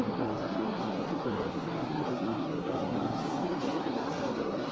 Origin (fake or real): fake